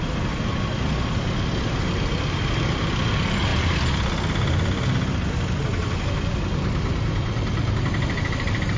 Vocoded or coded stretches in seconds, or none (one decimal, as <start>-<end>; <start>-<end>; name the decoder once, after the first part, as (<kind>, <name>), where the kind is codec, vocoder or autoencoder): none